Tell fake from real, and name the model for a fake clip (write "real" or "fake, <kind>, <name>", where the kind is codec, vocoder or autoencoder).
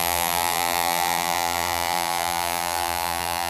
fake, vocoder, BigVGAN v2